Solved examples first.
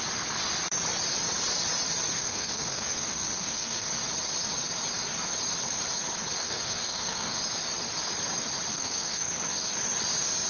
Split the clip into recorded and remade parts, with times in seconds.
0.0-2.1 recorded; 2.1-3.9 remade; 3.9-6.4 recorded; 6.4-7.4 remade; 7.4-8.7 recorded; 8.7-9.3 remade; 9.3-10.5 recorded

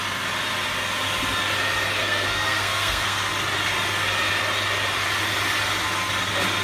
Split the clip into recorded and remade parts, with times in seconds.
0.0-2.0 recorded; 2.0-3.3 remade; 3.3-6.6 recorded